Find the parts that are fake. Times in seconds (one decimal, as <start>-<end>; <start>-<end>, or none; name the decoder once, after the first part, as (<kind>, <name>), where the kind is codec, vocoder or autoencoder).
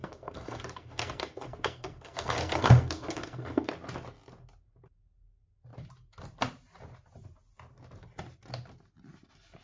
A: 0.0-3.7 (codec, SNAC)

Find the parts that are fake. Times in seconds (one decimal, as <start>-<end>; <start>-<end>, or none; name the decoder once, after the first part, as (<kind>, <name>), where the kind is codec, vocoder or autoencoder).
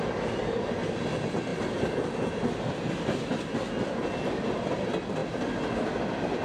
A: none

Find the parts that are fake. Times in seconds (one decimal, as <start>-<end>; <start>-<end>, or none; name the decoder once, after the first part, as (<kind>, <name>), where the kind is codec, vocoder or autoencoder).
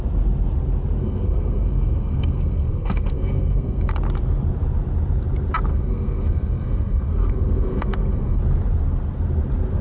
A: 1.0-3.9 (codec, SNAC); 5.7-8.4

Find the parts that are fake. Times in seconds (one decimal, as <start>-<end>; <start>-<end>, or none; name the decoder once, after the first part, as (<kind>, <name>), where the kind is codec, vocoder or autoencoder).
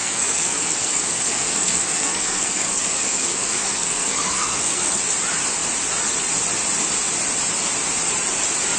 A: 0.0-5.0 (codec, SNAC)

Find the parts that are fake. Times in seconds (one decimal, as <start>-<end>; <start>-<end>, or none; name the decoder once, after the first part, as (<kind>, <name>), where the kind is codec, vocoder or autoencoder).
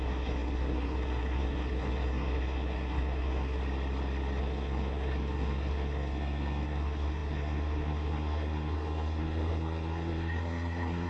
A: 0.0-3.6 (codec, SNAC); 4.4-11.1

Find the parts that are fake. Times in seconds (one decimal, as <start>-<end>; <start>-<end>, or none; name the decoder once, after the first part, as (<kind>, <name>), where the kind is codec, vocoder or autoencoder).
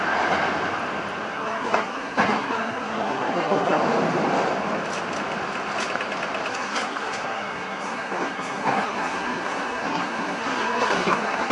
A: 1.3-3.8 (codec, SNAC); 6.5-11.5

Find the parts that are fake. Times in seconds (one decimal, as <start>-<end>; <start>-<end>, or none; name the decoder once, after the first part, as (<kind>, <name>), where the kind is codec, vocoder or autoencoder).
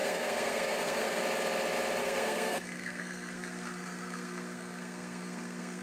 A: 0.0-1.2 (codec, SNAC); 2.0-5.8